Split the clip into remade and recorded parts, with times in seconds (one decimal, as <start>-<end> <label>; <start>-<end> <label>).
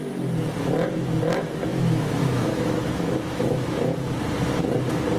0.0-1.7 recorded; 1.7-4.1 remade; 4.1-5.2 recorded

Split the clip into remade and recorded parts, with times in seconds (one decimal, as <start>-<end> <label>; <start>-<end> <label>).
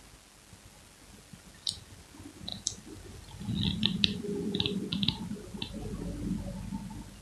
0.0-7.2 recorded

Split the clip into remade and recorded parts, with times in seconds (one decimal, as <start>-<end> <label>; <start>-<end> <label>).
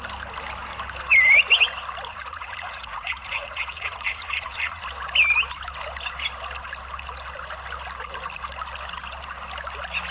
0.0-2.1 recorded; 2.1-4.8 remade; 4.8-10.1 recorded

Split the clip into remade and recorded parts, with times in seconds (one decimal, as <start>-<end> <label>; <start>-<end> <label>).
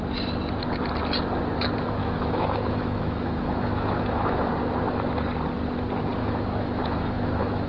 0.0-2.0 recorded; 2.0-4.5 remade; 4.5-6.2 recorded; 6.2-7.7 remade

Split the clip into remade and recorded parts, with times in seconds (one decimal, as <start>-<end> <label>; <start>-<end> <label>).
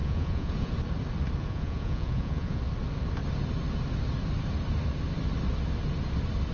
0.0-0.7 remade; 0.7-1.4 recorded; 1.4-2.6 remade; 2.6-6.5 recorded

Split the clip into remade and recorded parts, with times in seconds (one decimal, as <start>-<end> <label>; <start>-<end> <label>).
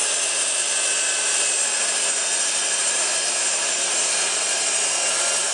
0.0-5.5 recorded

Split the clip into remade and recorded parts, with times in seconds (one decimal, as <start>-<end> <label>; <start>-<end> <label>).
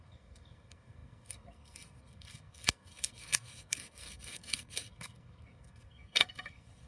0.0-6.9 remade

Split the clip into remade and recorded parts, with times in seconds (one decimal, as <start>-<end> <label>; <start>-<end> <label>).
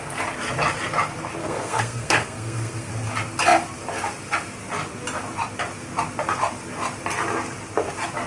0.0-1.4 recorded; 1.4-2.9 remade; 2.9-8.3 recorded